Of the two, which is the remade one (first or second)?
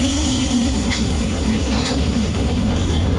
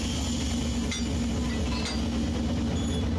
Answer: first